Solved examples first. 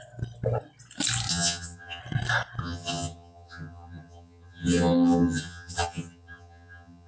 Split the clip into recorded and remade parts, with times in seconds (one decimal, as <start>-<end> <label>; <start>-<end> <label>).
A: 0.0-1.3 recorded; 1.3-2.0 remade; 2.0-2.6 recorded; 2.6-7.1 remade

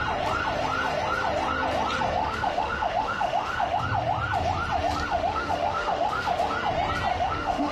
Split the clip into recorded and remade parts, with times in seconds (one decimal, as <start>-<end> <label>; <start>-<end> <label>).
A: 0.0-2.2 recorded; 2.2-3.8 remade; 3.8-5.1 recorded; 5.1-6.4 remade; 6.4-7.1 recorded; 7.1-7.7 remade

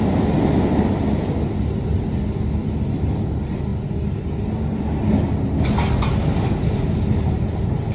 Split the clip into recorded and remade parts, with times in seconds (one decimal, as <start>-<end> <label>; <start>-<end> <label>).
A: 0.0-7.9 recorded

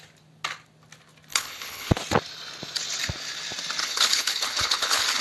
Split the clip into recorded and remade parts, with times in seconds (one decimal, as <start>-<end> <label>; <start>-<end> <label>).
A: 0.0-1.3 recorded; 1.3-1.9 remade; 1.9-3.8 recorded; 3.8-5.2 remade